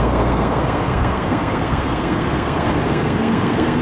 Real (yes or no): no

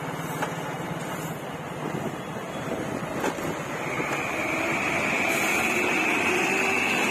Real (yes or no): yes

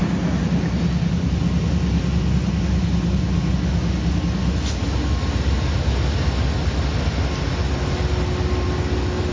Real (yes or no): yes